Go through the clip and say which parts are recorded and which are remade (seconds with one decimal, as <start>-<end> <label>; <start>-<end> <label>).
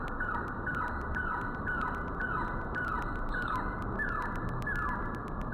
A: 0.0-5.5 recorded